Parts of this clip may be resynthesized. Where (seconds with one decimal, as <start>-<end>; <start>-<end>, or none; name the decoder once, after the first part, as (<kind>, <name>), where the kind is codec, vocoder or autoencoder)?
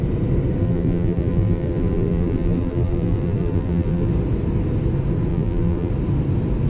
0.6-4.1 (vocoder, BigVGAN v2); 5.3-5.9